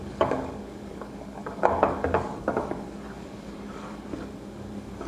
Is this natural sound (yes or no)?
no